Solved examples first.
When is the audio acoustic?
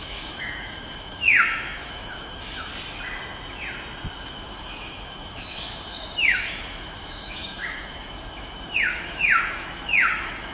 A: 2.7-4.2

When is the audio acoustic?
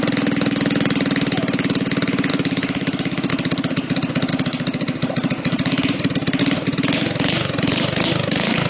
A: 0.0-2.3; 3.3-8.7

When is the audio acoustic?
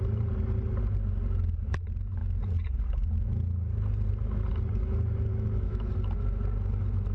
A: 0.0-5.3; 5.9-7.1